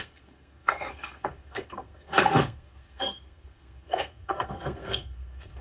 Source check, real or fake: fake